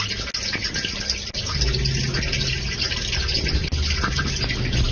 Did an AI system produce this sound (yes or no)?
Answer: no